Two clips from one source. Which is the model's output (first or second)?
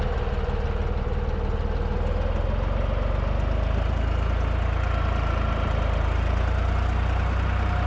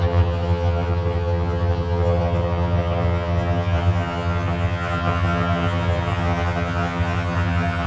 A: second